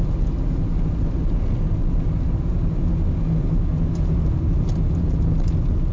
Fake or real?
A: real